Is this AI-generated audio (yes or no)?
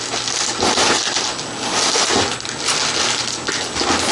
no